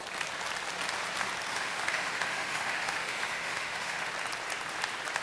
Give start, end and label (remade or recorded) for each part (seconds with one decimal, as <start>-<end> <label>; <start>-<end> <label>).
0.0-1.5 recorded; 1.5-4.1 remade; 4.1-5.2 recorded